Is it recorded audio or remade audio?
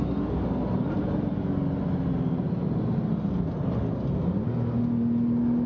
recorded